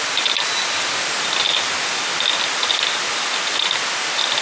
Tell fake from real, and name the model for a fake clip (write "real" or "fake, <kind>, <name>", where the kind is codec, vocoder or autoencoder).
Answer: real